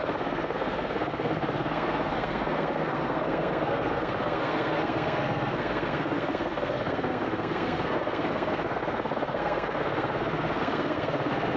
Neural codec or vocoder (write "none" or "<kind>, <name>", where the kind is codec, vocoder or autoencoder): codec, SNAC